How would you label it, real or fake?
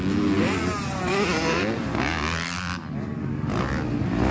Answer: real